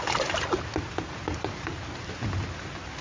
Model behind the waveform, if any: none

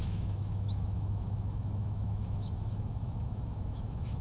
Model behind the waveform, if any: autoencoder, DAC-VAE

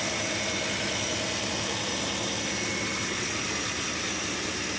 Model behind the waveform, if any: none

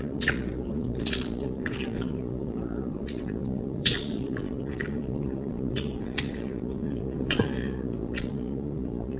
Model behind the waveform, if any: vocoder, Vocos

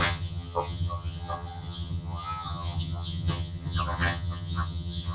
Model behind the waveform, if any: vocoder, HiFi-GAN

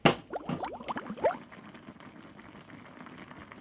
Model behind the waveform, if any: none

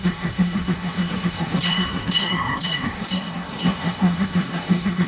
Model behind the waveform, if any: codec, SNAC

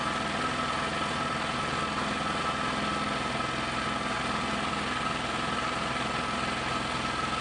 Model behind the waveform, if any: none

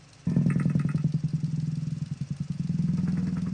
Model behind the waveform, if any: none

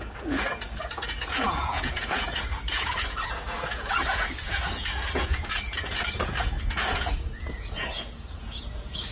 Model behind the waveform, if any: vocoder, Vocos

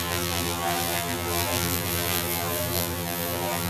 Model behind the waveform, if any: vocoder, BigVGAN v2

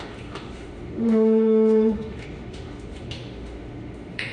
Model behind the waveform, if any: autoencoder, DAC-VAE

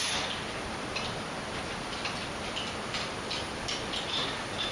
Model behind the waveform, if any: none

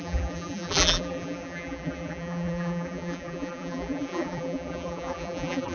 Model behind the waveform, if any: vocoder, BigVGAN v2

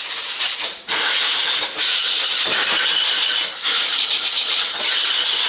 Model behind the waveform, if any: none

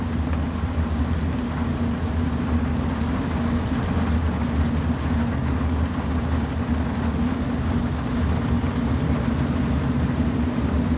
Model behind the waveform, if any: none